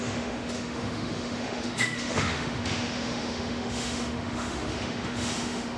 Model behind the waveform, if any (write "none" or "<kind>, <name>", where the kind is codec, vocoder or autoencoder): autoencoder, DAC-VAE